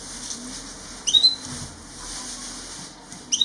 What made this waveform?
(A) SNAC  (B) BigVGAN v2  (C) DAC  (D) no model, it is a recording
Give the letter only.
D